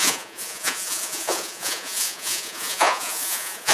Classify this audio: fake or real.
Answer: fake